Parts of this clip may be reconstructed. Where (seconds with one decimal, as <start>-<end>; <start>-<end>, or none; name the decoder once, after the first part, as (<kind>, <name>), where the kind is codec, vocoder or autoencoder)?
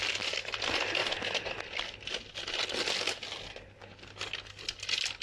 none